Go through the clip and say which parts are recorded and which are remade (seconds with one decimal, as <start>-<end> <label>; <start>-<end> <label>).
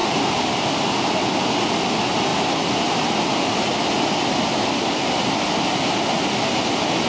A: 0.0-1.1 remade; 1.1-2.3 recorded; 2.3-5.6 remade; 5.6-7.1 recorded